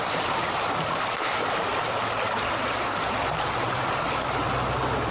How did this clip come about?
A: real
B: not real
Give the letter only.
A